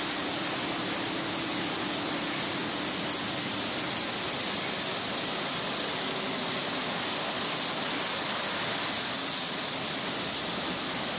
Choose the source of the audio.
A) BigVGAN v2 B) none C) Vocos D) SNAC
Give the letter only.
B